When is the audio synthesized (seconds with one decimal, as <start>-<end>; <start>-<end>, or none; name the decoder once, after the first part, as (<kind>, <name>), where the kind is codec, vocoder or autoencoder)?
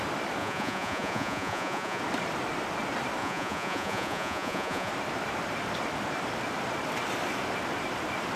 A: 0.4-2.0 (vocoder, Vocos); 3.2-4.9